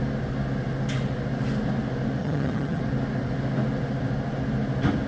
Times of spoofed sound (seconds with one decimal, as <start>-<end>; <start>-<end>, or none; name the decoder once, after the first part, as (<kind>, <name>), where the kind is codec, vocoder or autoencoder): 2.2-2.8 (vocoder, HiFi-GAN)